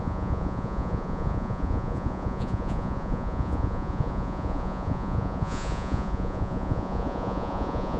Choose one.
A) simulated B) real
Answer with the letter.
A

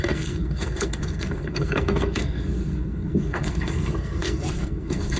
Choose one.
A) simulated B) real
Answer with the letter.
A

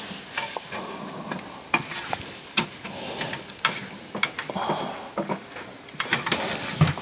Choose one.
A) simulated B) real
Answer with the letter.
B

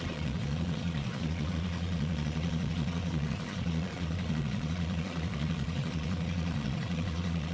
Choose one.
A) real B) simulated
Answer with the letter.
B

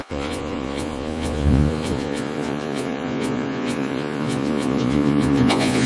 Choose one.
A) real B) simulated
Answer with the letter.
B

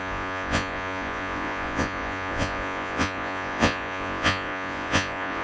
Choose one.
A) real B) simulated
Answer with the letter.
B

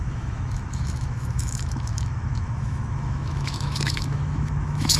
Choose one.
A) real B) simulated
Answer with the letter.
B